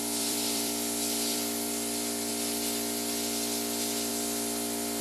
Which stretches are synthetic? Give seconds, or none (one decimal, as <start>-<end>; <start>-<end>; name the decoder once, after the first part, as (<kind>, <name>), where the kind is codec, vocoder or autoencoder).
0.0-2.3 (vocoder, BigVGAN v2); 4.1-5.0